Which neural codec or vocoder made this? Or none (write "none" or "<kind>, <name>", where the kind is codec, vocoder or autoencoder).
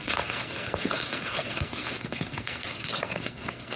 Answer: codec, SNAC